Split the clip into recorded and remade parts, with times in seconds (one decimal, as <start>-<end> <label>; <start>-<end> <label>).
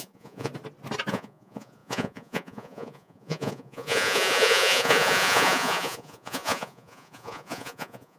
0.0-0.5 remade; 0.5-1.1 recorded; 1.1-8.2 remade